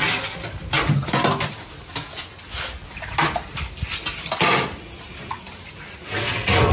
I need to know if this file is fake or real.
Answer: real